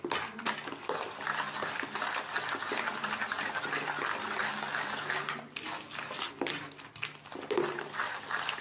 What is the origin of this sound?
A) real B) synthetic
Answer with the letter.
A